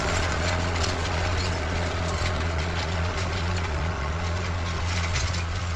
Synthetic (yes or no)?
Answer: yes